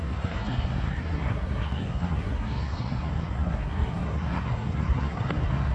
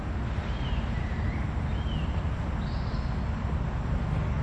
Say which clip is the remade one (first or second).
first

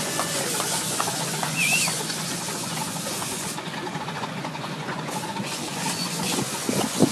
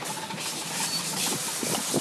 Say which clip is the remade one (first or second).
first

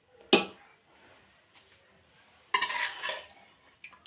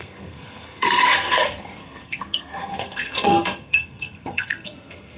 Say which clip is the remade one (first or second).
second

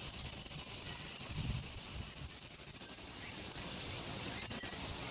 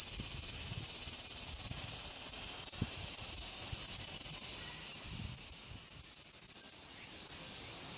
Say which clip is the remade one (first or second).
first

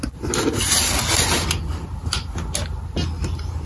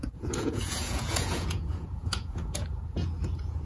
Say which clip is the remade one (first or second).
second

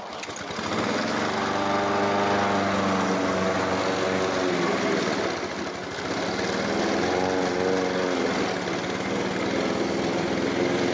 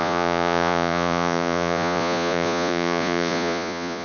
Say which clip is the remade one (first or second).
second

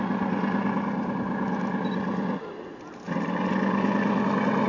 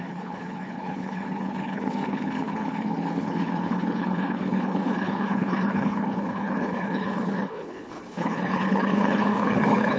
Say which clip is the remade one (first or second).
second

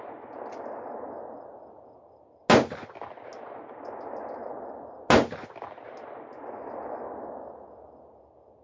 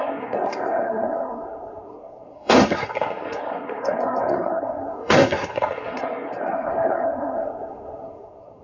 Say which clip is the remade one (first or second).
second